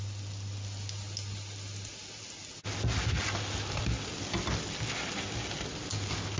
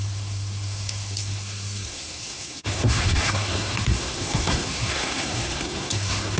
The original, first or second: first